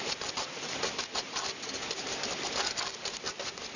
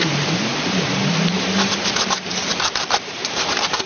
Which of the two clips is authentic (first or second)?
first